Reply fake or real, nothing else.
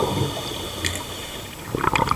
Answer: real